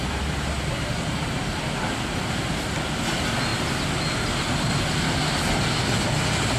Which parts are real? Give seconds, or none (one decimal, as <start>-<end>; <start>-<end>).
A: 0.0-6.6